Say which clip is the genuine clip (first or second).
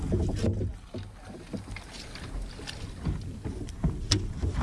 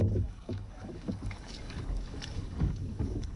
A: first